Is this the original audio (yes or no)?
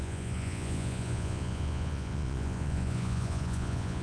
no